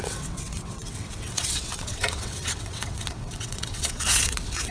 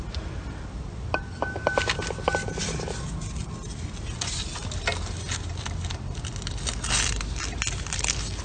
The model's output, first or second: first